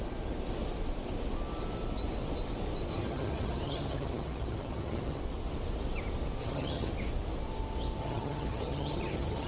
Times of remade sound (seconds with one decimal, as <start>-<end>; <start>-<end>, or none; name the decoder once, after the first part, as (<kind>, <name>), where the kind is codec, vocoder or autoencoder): 2.9-5.2 (vocoder, HiFi-GAN); 6.4-6.9; 8.0-9.5